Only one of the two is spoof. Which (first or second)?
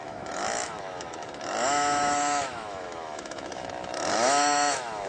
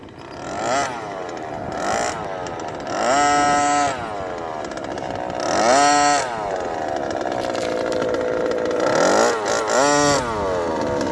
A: first